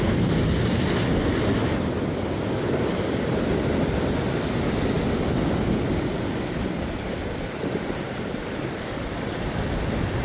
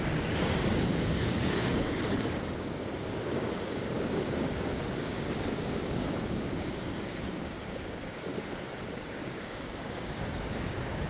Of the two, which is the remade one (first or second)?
second